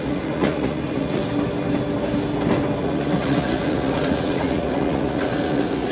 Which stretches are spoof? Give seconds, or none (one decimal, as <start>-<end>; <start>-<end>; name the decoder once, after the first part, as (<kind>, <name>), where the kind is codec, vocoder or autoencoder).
0.0-1.2 (vocoder, Vocos); 2.8-5.9